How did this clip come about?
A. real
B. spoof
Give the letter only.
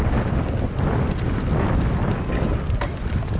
A